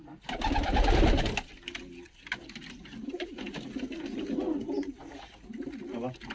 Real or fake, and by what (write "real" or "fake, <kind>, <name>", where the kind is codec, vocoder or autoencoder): real